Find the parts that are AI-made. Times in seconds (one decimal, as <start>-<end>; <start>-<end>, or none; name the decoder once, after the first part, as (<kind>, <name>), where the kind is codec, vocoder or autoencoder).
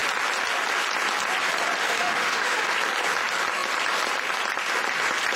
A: 1.8-2.7 (autoencoder, DAC-VAE)